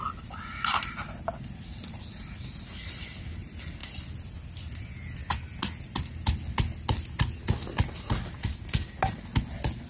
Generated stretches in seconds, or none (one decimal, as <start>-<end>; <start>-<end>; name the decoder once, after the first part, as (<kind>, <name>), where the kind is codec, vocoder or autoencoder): none